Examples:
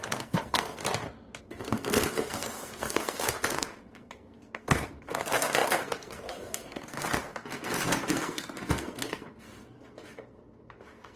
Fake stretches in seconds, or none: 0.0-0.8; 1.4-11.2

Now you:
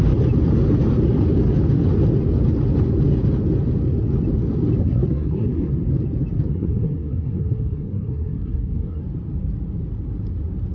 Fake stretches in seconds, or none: 4.8-5.7; 6.5-9.0

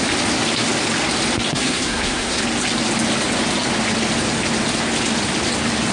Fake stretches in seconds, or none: 1.5-2.4